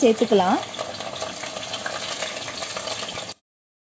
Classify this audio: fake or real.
real